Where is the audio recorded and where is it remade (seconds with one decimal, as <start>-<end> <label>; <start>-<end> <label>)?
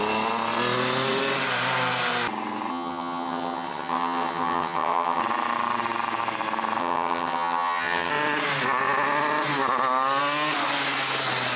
0.0-2.7 recorded; 2.7-5.2 remade; 5.2-6.8 recorded; 6.8-8.1 remade; 8.1-11.6 recorded